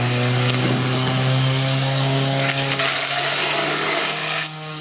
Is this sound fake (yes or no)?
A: yes